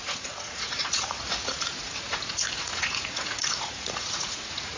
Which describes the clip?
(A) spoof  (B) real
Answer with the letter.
A